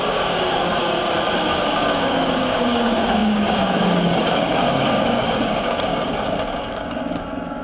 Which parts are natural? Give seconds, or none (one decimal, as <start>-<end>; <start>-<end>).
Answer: 0.8-1.3